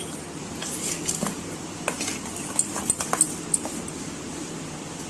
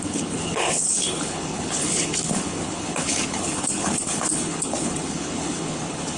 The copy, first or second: second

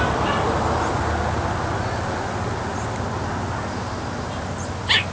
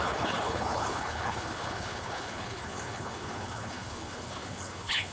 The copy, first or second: second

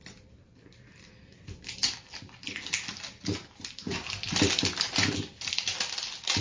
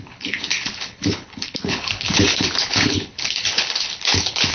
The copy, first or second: second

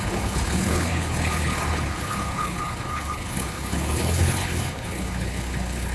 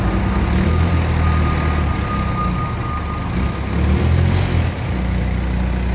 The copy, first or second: first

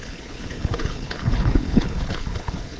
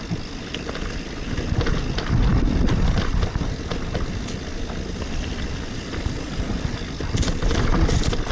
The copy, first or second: first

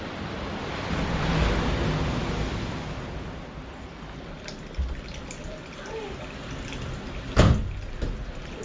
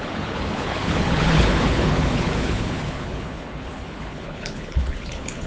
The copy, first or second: second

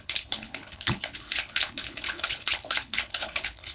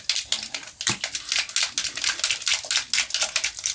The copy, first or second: first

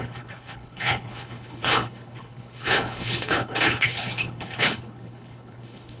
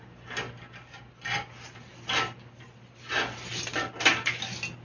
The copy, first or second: first